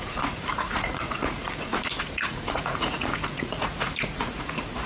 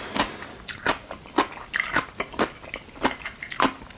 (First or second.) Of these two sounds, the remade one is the first